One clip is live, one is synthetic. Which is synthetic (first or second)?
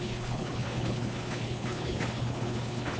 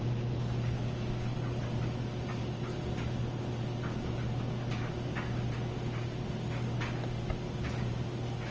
first